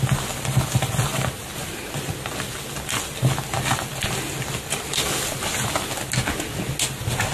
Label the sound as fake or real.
real